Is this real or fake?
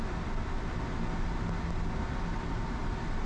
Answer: real